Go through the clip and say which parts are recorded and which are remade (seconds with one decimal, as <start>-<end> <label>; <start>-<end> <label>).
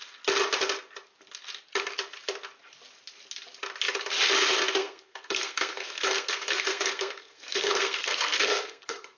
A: 0.0-4.8 recorded; 4.8-9.2 remade